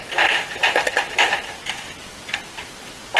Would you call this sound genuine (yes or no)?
yes